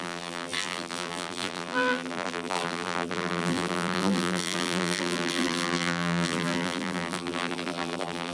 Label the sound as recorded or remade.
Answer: remade